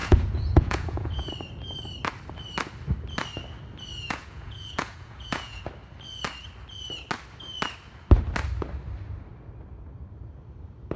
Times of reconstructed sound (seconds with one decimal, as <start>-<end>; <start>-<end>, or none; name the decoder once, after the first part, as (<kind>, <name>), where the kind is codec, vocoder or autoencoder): 0.0-1.3 (vocoder, Vocos); 3.9-5.6